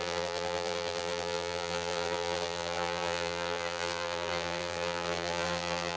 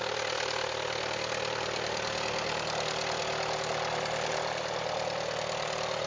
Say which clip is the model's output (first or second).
first